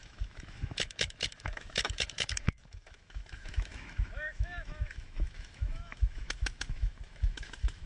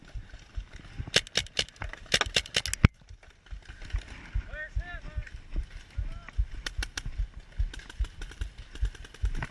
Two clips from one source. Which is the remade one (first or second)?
first